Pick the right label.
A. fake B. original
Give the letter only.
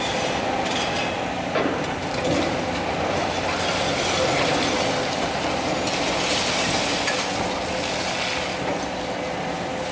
B